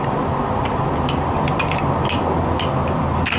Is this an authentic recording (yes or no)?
yes